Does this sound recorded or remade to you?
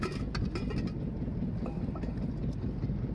recorded